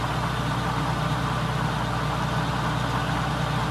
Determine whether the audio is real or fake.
real